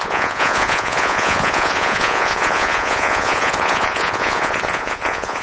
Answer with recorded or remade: remade